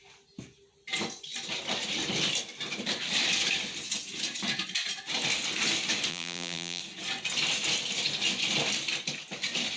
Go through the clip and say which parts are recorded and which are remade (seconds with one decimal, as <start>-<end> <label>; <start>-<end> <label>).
0.0-6.1 recorded; 6.1-6.8 remade; 6.8-9.8 recorded

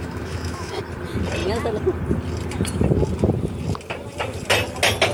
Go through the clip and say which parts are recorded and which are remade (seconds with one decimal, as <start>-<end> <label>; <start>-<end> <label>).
0.0-0.8 remade; 0.8-5.1 recorded

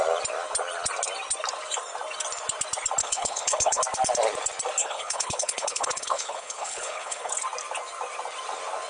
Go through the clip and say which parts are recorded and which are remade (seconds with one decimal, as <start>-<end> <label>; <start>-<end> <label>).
0.0-3.0 recorded; 3.0-3.8 remade; 3.8-4.8 recorded; 4.8-7.3 remade; 7.3-8.9 recorded

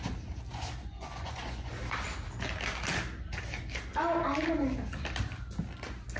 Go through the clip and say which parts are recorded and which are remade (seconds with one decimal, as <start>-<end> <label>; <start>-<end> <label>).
0.0-0.9 recorded; 0.9-1.7 remade; 1.7-6.2 recorded

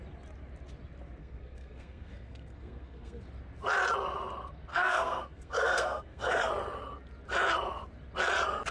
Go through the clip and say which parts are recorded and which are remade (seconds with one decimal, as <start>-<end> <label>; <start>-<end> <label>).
0.0-1.2 recorded; 1.2-3.2 remade; 3.2-4.7 recorded; 4.7-6.5 remade; 6.5-8.7 recorded

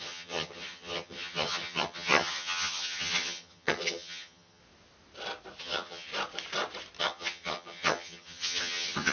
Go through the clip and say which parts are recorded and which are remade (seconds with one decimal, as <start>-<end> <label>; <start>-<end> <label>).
0.0-4.6 remade; 4.6-5.6 recorded; 5.6-6.1 remade; 6.1-7.0 recorded; 7.0-9.1 remade

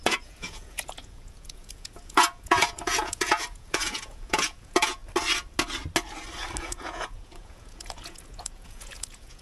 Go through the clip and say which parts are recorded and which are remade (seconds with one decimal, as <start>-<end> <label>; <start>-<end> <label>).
0.0-5.0 remade; 5.0-6.6 recorded; 6.6-9.4 remade

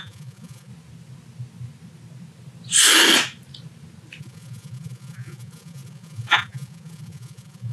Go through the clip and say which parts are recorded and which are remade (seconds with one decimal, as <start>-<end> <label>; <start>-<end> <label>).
0.0-0.7 remade; 0.7-4.2 recorded; 4.2-7.7 remade